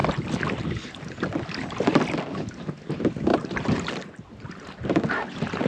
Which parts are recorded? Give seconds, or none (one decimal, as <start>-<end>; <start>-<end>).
0.0-3.3; 3.9-5.7